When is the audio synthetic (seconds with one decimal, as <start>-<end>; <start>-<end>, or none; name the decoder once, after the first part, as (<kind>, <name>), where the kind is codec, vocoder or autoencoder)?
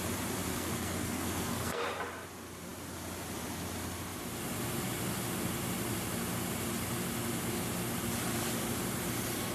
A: 0.5-1.8 (codec, SNAC)